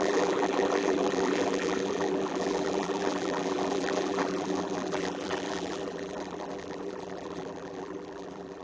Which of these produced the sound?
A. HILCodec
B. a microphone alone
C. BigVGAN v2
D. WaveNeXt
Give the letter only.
C